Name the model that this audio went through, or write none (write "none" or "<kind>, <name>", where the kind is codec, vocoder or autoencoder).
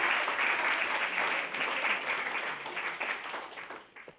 none